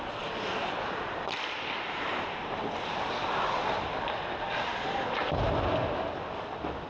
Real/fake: real